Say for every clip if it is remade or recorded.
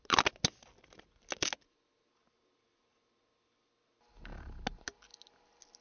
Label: recorded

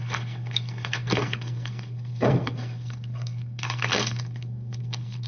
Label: remade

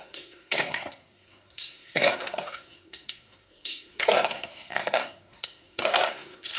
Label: remade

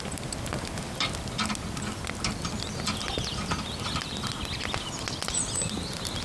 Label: recorded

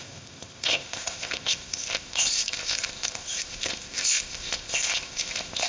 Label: remade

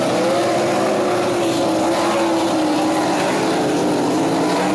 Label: recorded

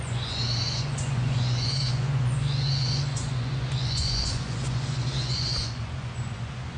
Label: remade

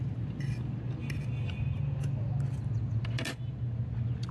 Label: recorded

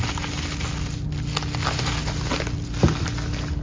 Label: recorded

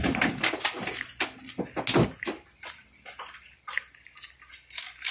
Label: recorded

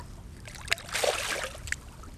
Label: recorded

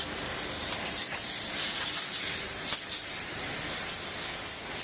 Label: recorded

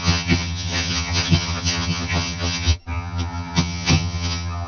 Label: remade